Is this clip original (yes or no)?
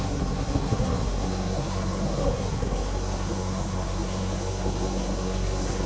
no